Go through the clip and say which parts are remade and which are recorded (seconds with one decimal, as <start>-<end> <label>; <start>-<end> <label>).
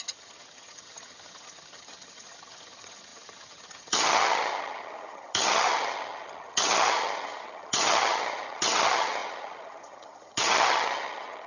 0.0-11.5 remade